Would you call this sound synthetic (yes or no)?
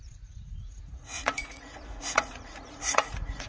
yes